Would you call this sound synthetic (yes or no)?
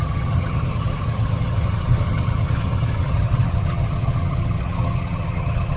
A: yes